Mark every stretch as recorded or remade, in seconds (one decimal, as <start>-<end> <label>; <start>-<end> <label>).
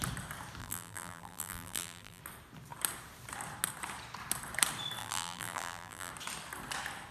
0.0-0.6 recorded; 0.6-2.2 remade; 2.2-5.0 recorded; 5.0-6.1 remade; 6.1-7.1 recorded